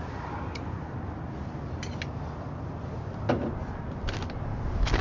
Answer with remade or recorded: recorded